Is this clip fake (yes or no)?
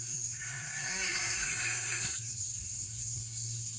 yes